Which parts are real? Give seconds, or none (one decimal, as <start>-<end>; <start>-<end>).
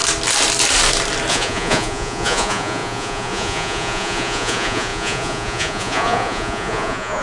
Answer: 0.0-1.3